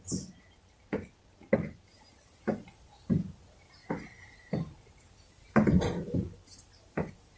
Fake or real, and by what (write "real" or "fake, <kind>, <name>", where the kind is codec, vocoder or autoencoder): real